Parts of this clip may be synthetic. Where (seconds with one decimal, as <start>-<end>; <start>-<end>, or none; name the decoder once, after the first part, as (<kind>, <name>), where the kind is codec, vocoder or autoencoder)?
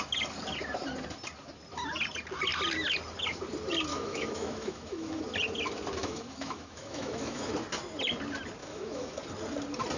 3.9-5.2 (autoencoder, DAC-VAE); 6.0-7.5; 8.6-9.2